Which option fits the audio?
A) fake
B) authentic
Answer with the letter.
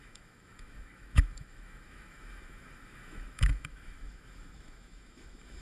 A